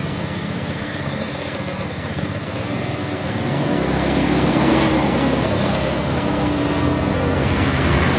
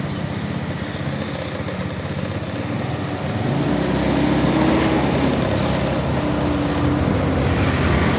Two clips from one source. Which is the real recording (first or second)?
second